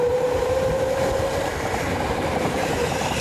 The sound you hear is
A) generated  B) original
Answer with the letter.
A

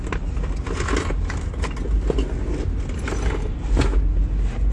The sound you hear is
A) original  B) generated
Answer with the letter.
A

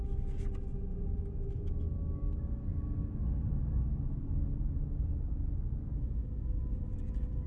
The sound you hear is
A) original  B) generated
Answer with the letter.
A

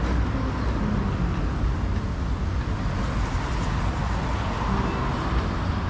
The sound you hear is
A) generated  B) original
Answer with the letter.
B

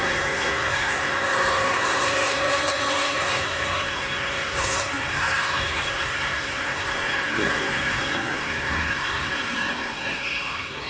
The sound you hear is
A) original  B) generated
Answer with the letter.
B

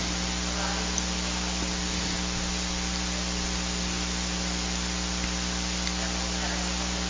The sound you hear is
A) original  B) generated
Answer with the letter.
A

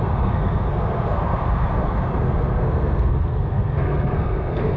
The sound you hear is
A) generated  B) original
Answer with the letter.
A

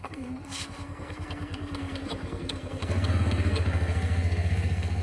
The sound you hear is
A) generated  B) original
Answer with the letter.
A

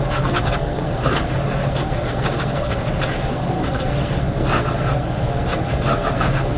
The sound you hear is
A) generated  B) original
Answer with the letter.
A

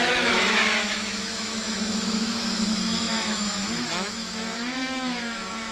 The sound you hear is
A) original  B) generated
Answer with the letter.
B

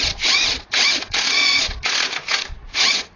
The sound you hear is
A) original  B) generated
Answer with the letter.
B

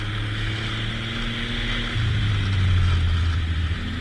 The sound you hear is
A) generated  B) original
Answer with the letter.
B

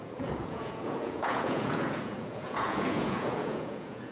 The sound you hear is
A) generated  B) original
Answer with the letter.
A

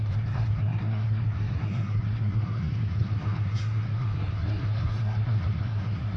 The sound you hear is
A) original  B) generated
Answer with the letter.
B